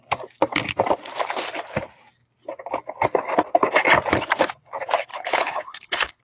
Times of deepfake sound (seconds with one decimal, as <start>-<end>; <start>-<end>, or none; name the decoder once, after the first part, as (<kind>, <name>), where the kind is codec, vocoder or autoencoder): 5.1-6.2 (codec, HILCodec)